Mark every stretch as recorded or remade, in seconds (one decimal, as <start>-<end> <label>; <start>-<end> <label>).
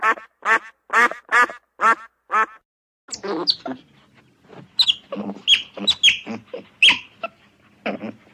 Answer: 0.0-8.3 recorded